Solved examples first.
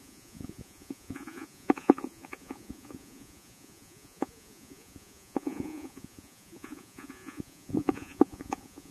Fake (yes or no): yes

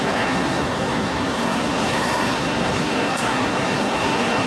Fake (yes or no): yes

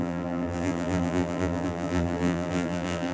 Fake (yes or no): yes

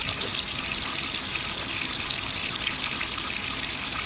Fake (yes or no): yes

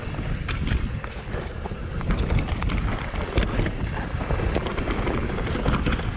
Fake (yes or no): no